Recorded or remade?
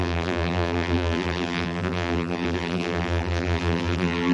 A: remade